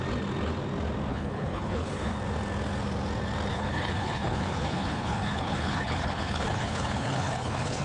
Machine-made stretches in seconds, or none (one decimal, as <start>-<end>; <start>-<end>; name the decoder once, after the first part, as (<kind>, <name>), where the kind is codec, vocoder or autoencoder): 1.1-2.1 (codec, HILCodec); 3.5-7.8